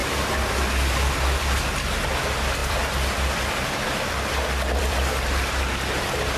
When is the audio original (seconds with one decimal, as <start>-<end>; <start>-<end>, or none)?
0.0-2.6; 6.0-6.4